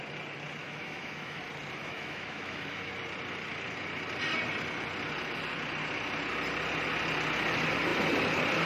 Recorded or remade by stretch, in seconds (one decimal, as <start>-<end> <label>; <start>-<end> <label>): 0.0-0.6 recorded; 0.6-1.4 remade; 1.4-1.8 recorded; 1.8-2.9 remade; 2.9-8.7 recorded